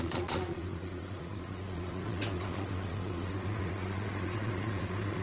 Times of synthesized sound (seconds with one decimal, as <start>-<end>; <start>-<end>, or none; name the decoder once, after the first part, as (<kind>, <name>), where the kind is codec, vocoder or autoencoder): 0.0-5.2 (vocoder, Vocos)